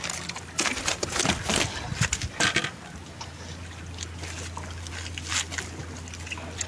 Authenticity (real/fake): real